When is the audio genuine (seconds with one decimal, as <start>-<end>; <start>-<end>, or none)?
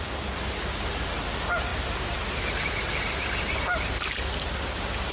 0.0-5.1